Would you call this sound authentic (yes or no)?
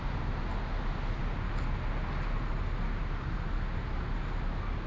yes